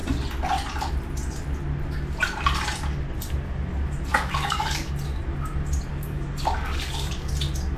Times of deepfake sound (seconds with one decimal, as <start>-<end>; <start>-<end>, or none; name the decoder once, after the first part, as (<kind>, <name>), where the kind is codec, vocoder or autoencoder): 4.1-4.9 (codec, DAC); 5.9-7.3